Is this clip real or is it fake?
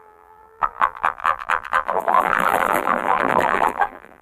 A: fake